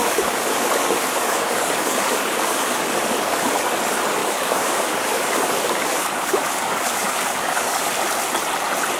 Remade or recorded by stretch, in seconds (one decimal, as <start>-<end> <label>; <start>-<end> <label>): 0.0-3.6 remade; 3.6-4.2 recorded; 4.2-7.9 remade; 7.9-9.0 recorded